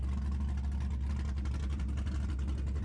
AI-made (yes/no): no